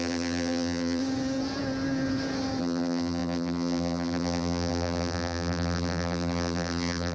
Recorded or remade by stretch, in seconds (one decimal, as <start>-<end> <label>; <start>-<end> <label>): 0.0-1.0 remade; 1.0-2.6 recorded; 2.6-7.1 remade